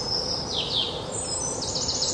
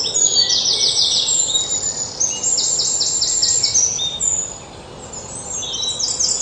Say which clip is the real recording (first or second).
second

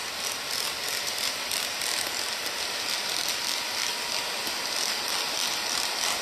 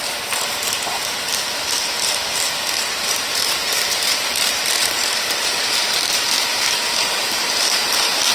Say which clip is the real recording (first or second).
first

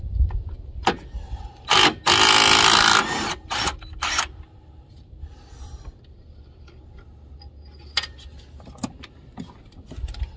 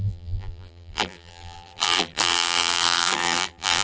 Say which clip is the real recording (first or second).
first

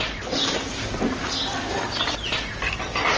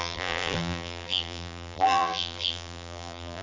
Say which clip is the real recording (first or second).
first